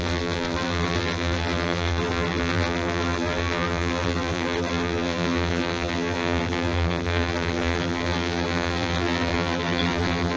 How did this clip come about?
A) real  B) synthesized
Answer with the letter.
B